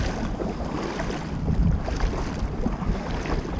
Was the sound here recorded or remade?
recorded